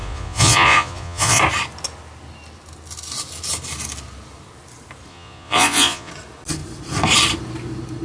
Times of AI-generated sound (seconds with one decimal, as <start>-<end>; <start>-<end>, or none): 0.0-1.4; 5.1-6.1